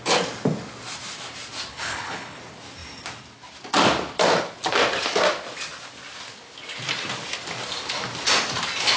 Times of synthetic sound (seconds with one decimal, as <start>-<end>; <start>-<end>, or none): 1.7-2.4